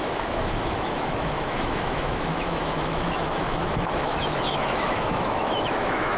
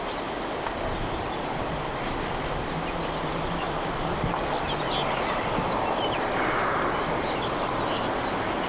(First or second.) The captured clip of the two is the second